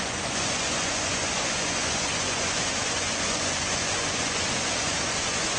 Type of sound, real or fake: fake